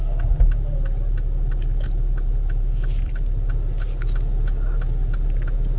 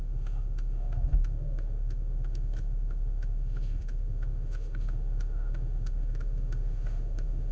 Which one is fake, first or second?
second